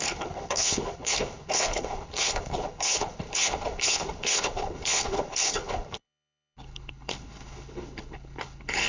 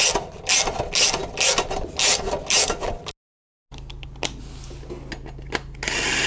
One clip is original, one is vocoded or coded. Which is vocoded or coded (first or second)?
first